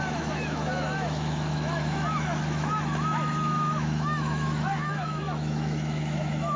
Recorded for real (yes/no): no